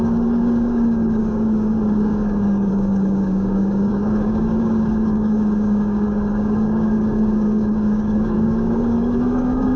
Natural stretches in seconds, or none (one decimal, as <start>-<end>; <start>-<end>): none